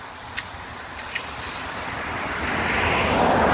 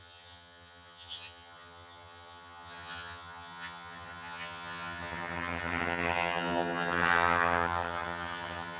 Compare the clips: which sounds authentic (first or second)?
first